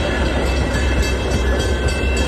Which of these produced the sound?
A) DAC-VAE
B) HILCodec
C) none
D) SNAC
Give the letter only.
C